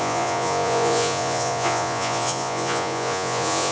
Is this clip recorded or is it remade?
remade